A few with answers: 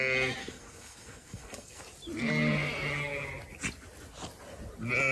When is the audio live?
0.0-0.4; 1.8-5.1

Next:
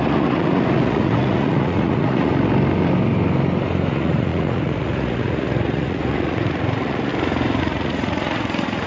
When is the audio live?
2.3-3.9; 7.1-7.6

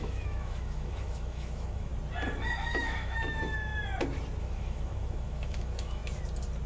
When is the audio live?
1.9-2.7; 3.7-4.4; 6.0-6.7

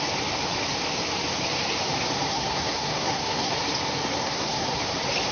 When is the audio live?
0.0-2.3; 3.5-4.2; 4.8-5.3

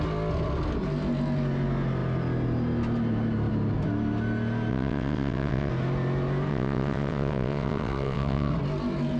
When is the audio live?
0.0-4.7; 5.7-6.5; 8.5-9.2